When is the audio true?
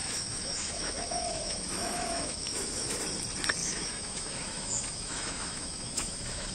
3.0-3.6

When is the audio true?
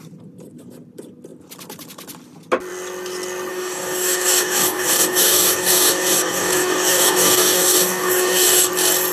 0.0-3.5; 8.7-9.1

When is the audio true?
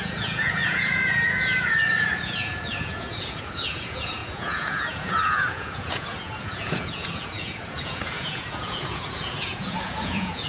none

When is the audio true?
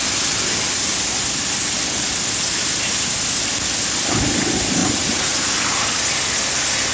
0.0-4.8; 5.6-6.9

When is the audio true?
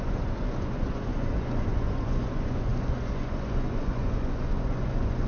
none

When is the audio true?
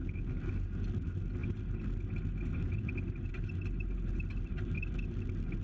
0.0-5.6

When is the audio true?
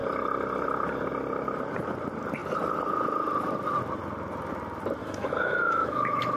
0.0-5.0